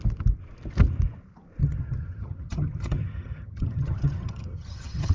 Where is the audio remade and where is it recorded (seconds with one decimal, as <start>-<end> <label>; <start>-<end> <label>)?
0.0-1.6 recorded; 1.6-5.1 remade